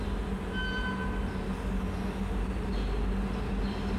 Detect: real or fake real